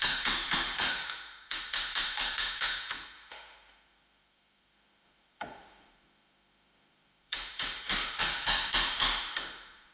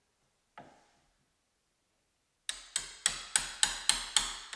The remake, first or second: first